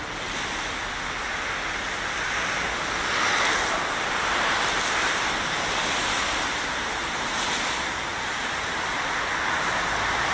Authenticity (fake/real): real